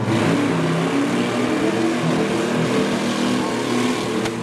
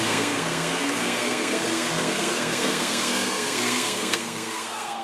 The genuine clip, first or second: first